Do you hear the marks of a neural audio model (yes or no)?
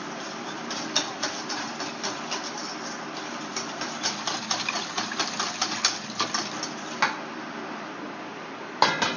yes